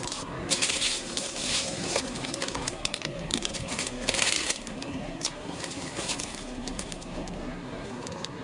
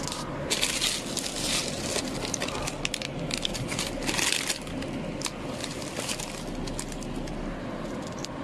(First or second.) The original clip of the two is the second